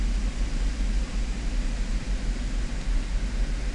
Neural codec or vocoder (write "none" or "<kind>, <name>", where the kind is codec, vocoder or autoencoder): none